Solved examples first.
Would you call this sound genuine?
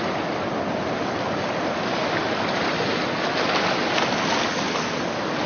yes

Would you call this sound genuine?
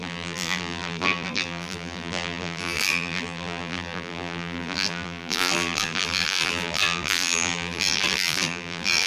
no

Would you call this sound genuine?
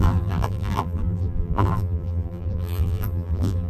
no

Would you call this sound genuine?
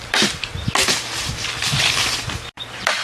yes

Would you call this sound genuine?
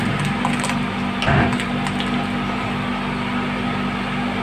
yes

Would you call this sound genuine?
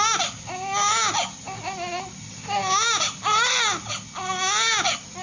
yes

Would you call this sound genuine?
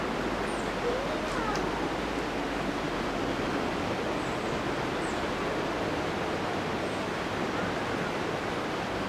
yes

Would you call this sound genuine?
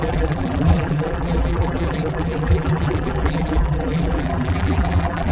no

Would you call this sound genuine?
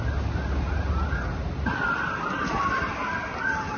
yes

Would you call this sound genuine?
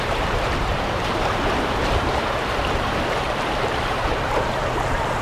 no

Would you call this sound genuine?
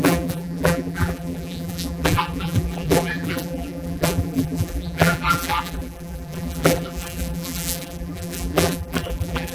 no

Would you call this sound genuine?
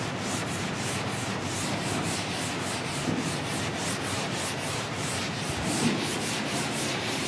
no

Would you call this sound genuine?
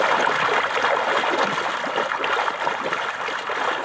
yes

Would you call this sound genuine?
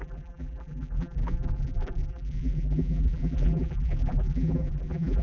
no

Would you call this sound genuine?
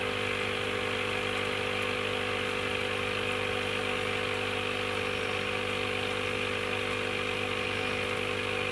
yes